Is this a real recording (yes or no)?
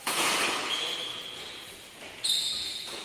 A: no